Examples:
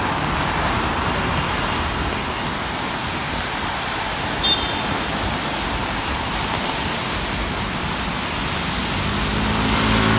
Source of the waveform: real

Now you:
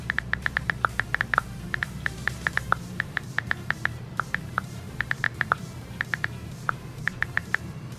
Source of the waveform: fake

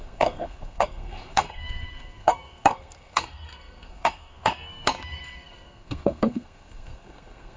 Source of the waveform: fake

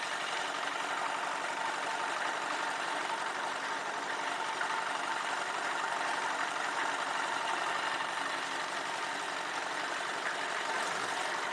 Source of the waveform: fake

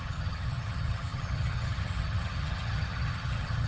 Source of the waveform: fake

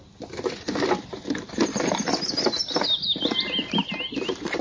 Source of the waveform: real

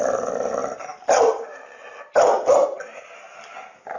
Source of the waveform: real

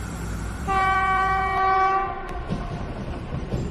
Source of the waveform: fake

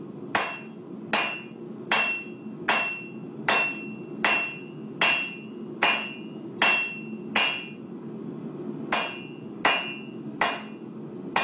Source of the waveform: real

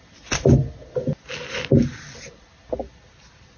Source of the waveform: real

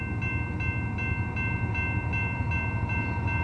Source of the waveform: real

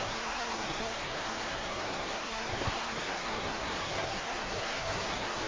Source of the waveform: fake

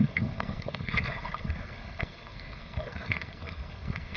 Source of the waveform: fake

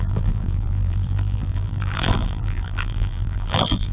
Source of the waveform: fake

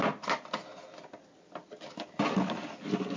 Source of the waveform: real